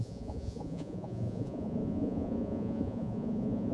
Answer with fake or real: fake